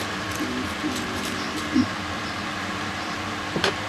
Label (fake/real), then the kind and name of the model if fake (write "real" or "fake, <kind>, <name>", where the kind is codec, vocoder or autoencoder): fake, vocoder, BigVGAN v2